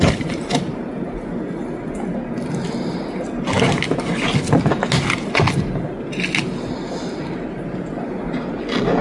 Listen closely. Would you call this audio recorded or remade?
recorded